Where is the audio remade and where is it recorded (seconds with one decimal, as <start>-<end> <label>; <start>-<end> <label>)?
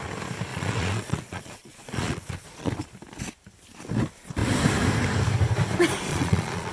0.0-0.5 recorded; 0.5-2.7 remade; 2.7-6.1 recorded; 6.1-6.7 remade